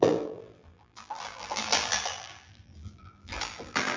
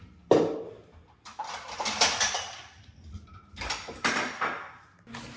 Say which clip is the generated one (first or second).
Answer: first